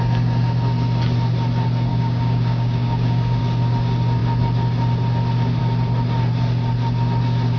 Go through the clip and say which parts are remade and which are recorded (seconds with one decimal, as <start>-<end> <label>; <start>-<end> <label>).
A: 0.0-1.9 recorded; 1.9-3.4 remade; 3.4-7.6 recorded